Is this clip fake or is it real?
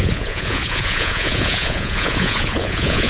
fake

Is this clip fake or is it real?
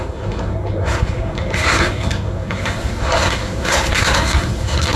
fake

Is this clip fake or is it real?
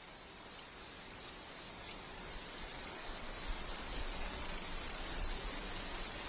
real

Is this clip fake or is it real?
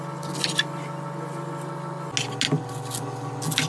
real